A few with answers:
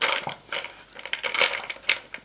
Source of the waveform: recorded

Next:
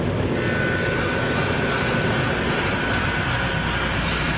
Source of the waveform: recorded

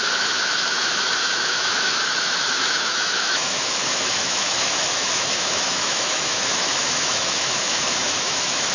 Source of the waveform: remade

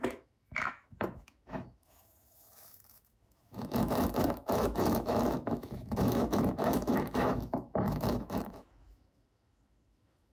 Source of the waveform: remade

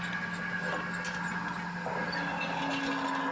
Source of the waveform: recorded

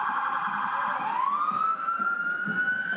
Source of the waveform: recorded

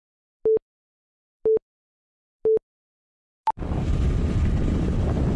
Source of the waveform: recorded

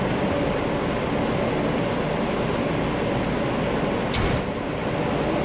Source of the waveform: recorded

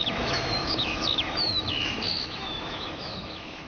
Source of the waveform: remade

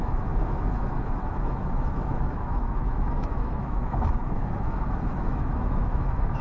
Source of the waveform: remade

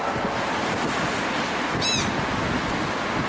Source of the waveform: recorded